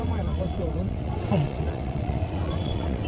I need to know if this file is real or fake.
fake